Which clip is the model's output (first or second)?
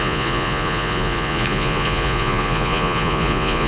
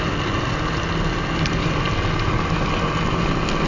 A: first